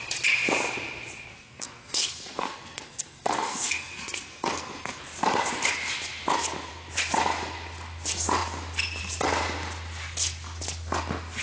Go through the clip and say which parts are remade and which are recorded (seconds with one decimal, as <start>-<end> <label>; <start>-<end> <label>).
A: 0.0-1.3 recorded; 1.3-5.0 remade; 5.0-11.4 recorded